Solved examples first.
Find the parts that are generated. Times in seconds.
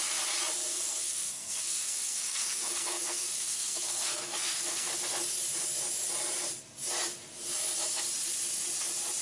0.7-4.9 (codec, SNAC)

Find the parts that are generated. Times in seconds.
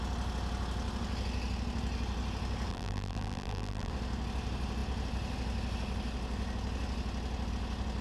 2.7-3.9 (vocoder, BigVGAN v2)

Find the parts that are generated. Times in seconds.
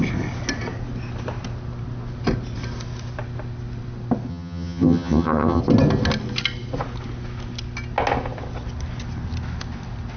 4.3-5.6 (vocoder, HiFi-GAN)